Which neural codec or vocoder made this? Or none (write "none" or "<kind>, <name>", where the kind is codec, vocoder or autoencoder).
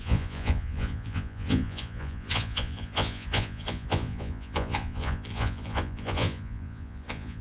vocoder, Vocos